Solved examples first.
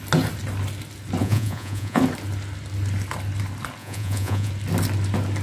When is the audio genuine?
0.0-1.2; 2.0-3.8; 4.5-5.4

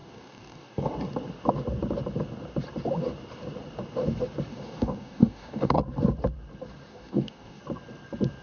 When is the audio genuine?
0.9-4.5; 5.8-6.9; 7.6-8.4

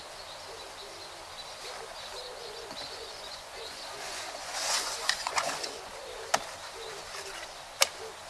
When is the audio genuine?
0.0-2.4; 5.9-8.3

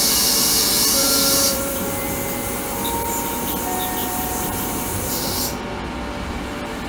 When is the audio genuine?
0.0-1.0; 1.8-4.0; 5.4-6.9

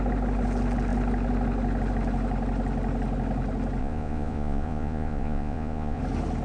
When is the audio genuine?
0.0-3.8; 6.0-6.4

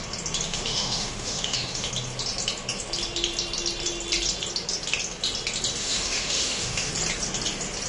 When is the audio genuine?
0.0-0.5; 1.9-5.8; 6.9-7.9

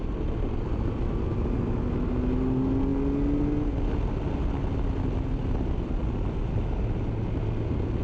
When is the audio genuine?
0.0-8.0